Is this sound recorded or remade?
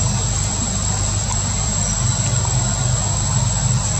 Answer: recorded